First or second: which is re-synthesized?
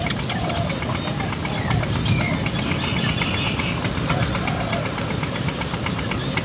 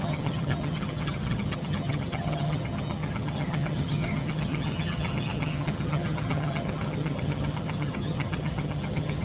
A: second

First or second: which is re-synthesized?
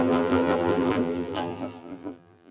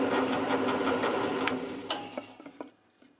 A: first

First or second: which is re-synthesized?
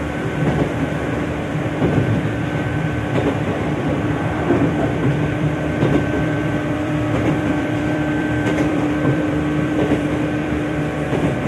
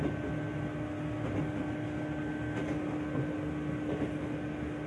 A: first